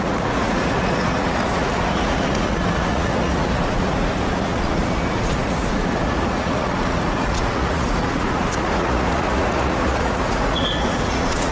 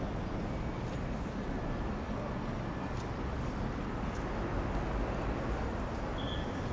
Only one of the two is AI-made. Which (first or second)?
first